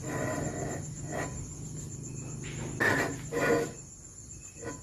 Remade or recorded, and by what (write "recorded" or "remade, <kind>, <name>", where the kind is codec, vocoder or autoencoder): recorded